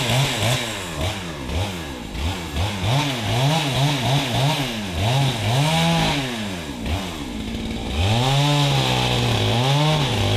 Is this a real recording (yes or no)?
yes